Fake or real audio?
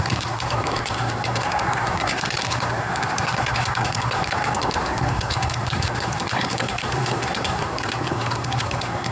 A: fake